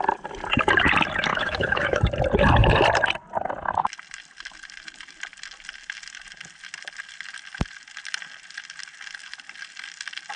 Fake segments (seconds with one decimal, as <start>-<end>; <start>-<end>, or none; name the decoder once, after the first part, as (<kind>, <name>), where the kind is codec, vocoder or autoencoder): 1.3-2.0 (autoencoder, DAC-VAE)